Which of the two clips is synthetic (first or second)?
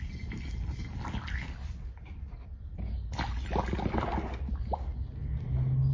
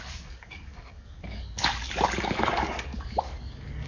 second